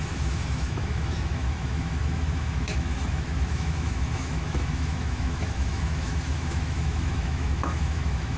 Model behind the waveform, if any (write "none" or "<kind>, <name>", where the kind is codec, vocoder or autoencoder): autoencoder, DAC-VAE